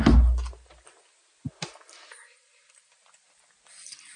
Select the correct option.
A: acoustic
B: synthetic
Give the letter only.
A